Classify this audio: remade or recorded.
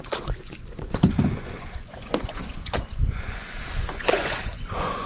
remade